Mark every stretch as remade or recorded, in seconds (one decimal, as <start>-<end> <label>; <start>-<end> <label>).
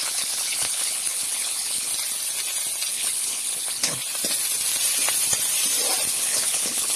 0.0-1.9 remade; 1.9-2.9 recorded; 2.9-4.0 remade; 4.0-6.1 recorded; 6.1-7.0 remade